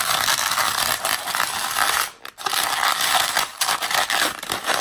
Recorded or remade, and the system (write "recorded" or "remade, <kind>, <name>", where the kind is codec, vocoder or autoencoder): remade, vocoder, BigVGAN v2